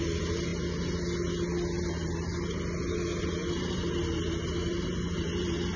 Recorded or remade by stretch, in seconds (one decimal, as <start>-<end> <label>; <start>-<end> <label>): 0.0-0.5 remade; 0.5-3.2 recorded; 3.2-5.8 remade